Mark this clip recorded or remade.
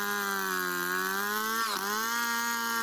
recorded